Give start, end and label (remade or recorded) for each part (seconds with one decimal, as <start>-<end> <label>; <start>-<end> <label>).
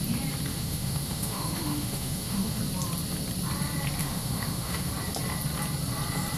0.0-0.5 recorded; 0.5-2.6 remade; 2.6-4.0 recorded; 4.0-4.9 remade; 4.9-6.4 recorded